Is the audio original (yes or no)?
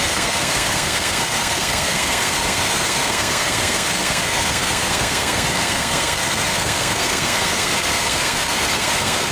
no